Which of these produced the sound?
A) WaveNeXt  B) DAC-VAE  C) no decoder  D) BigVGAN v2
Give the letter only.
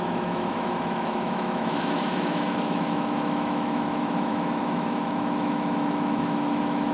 B